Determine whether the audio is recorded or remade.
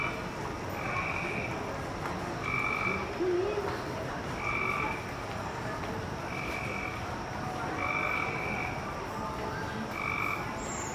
recorded